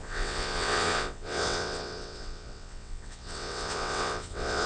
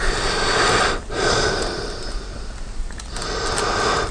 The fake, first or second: first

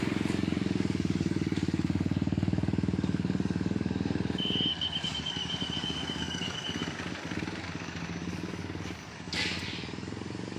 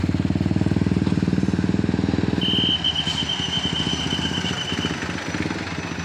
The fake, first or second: first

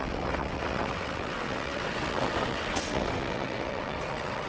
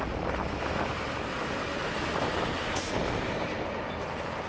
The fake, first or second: first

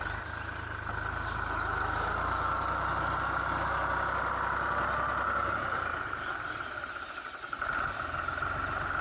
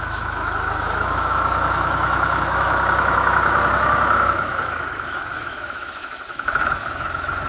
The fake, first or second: second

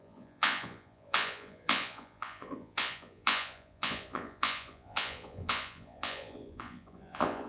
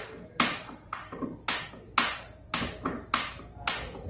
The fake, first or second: first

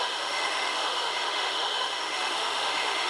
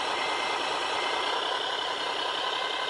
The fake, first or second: first